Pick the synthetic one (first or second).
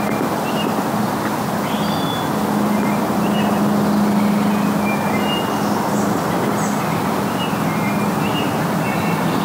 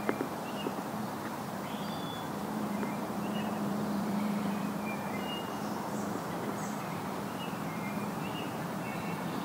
second